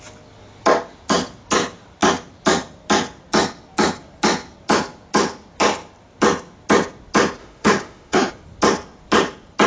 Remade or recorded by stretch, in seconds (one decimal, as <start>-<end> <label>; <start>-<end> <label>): 0.0-7.4 recorded; 7.4-8.3 remade; 8.3-9.7 recorded